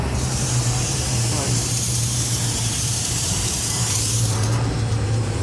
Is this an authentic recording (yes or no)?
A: no